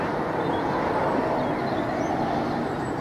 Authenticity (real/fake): real